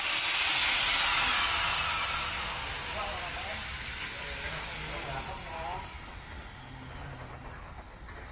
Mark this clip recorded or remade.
recorded